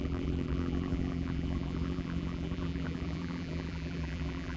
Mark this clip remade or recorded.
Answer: remade